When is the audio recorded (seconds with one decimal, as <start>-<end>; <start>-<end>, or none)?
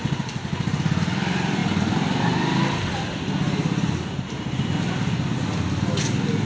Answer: 0.0-6.5